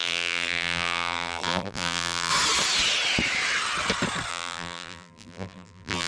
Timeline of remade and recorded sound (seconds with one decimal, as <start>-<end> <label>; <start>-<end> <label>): 0.0-2.3 remade; 2.3-4.3 recorded; 4.3-6.1 remade